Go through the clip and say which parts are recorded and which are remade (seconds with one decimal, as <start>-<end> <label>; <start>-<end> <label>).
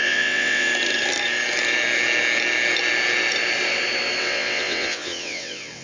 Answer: 0.0-0.7 remade; 0.7-4.2 recorded; 4.2-5.8 remade